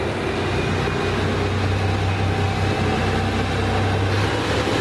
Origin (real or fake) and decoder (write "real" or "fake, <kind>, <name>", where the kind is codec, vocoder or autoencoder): real